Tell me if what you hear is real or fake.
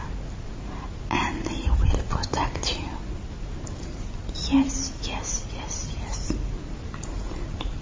real